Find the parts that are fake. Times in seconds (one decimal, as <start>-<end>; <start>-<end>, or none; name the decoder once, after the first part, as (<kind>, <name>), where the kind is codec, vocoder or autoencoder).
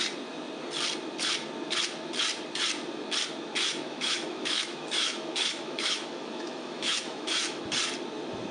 3.7-7.6 (autoencoder, DAC-VAE)